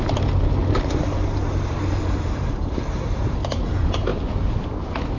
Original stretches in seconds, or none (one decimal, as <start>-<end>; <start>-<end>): 0.0-0.6; 3.6-5.2